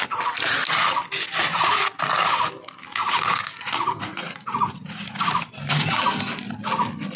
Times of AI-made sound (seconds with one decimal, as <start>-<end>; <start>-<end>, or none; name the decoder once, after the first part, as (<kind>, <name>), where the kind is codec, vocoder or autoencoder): 3.0-5.4 (vocoder, Vocos)